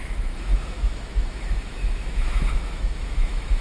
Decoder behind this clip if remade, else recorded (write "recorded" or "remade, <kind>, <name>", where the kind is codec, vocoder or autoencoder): remade, autoencoder, DAC-VAE